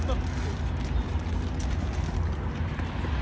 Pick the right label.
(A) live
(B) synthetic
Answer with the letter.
A